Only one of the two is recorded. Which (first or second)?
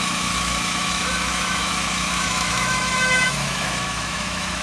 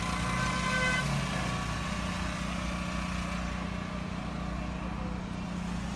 second